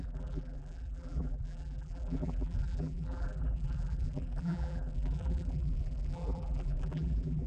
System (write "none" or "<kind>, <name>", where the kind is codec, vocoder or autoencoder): vocoder, BigVGAN v2